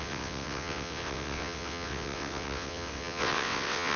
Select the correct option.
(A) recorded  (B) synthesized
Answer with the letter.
B